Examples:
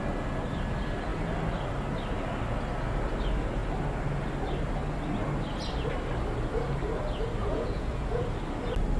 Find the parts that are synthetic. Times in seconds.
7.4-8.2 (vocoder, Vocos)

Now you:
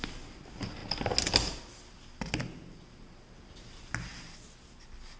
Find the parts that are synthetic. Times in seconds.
none

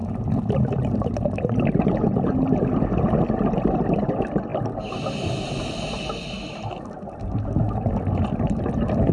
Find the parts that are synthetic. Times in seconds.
none

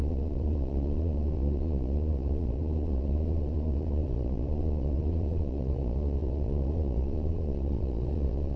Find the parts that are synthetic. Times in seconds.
0.0-8.6 (vocoder, Vocos)

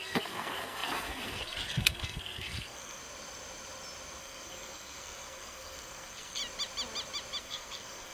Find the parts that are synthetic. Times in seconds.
0.0-3.0 (codec, SNAC); 4.2-6.4; 7.4-8.1

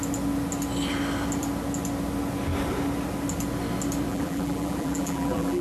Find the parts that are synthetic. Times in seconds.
4.1-5.6 (vocoder, BigVGAN v2)

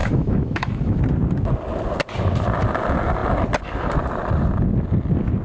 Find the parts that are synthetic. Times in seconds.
0.0-1.0 (autoencoder, DAC-VAE)

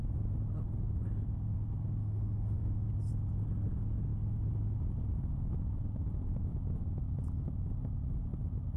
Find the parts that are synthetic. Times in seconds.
2.0-2.9 (autoencoder, DAC-VAE)